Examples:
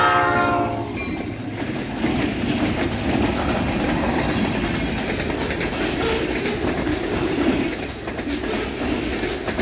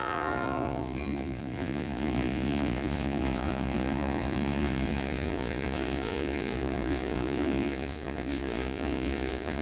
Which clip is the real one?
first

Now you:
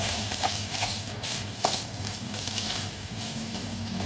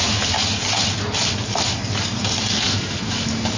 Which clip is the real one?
second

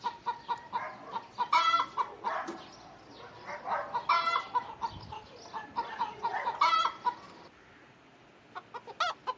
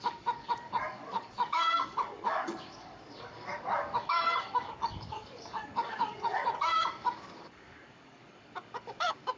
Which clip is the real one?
first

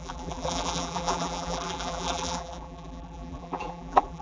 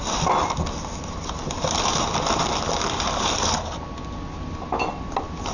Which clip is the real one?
second